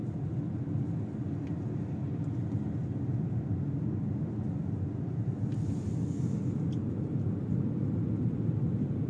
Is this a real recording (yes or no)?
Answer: yes